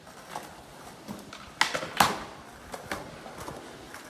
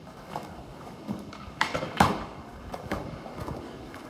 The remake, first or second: second